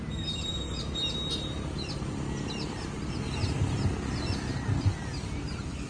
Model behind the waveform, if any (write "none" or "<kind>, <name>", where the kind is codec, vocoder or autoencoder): none